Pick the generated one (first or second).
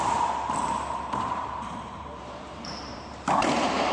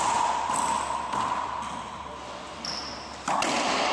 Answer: first